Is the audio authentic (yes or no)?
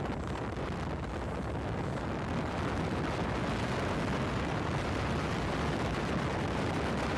yes